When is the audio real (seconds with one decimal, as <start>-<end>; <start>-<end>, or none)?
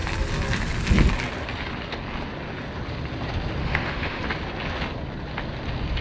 0.0-3.6; 4.2-6.0